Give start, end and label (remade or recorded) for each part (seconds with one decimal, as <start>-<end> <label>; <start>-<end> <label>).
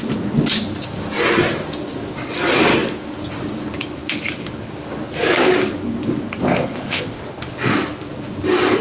0.0-6.4 recorded; 6.4-7.2 remade; 7.2-8.8 recorded